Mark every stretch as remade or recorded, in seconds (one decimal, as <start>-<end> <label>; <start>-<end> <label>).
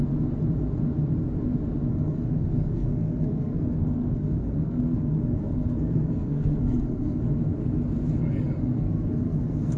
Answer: 0.0-1.9 recorded; 1.9-7.2 remade; 7.2-8.6 recorded; 8.6-9.8 remade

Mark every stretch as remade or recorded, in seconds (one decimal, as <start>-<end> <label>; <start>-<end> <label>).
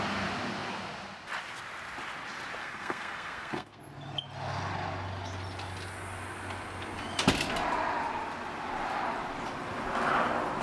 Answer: 0.0-2.6 recorded; 2.6-3.8 remade; 3.8-10.6 recorded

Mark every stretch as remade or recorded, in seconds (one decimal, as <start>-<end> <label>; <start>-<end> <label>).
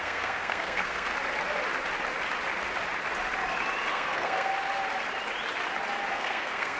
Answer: 0.0-1.1 remade; 1.1-3.9 recorded; 3.9-4.5 remade; 4.5-6.1 recorded; 6.1-6.8 remade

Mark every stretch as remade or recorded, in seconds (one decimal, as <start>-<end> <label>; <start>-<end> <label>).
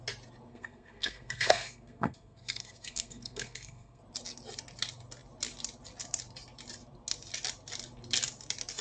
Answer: 0.0-0.5 recorded; 0.5-4.0 remade; 4.0-8.8 recorded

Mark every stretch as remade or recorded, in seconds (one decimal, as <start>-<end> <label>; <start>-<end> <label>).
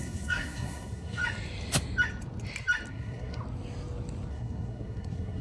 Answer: 0.0-1.2 remade; 1.2-2.9 recorded; 2.9-3.4 remade; 3.4-4.3 recorded; 4.3-5.4 remade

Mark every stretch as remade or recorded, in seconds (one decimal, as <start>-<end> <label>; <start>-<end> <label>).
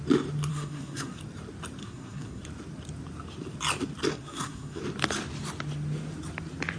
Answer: 0.0-0.5 recorded; 0.5-1.2 remade; 1.2-1.8 recorded; 1.8-2.4 remade; 2.4-4.1 recorded; 4.1-4.8 remade; 4.8-6.8 recorded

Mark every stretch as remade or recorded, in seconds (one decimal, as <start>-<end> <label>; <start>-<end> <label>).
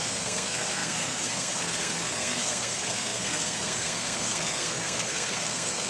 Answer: 0.0-5.9 remade